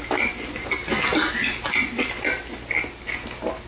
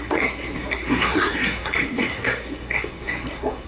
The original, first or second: first